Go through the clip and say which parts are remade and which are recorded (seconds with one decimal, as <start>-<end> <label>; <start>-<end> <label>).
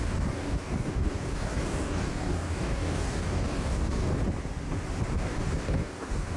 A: 0.0-4.1 remade; 4.1-5.1 recorded; 5.1-6.4 remade